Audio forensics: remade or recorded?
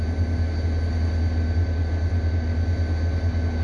recorded